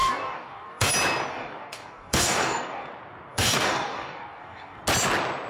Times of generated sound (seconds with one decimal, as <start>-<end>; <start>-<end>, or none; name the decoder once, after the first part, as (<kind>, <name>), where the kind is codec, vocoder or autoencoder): 0.0-0.9 (codec, DAC); 1.3-2.9; 3.3-4.8